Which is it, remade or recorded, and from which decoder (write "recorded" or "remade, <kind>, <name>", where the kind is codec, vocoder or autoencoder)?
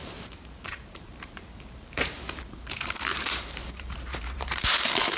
remade, vocoder, BigVGAN v2